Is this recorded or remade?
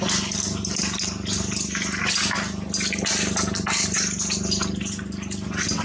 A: recorded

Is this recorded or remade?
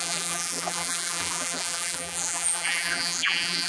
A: remade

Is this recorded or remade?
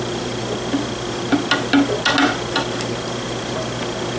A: recorded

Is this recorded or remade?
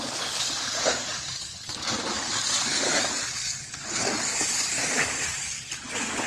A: remade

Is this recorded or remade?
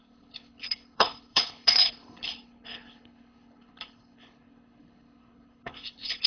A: remade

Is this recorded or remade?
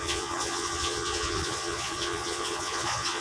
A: remade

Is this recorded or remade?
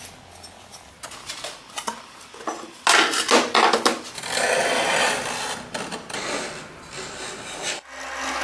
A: recorded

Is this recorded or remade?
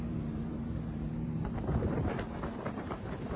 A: remade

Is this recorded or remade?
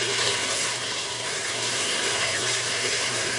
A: remade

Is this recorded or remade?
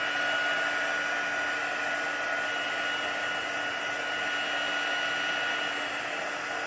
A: recorded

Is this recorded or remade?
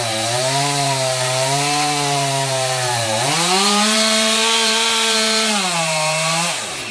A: remade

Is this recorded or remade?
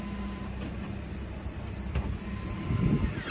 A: recorded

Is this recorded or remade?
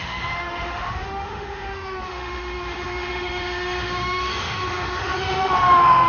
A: remade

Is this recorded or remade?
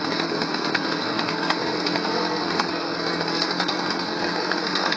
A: remade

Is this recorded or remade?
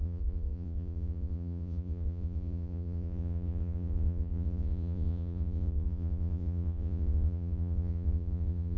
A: remade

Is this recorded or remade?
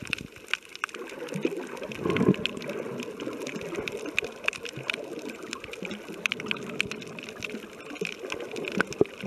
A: recorded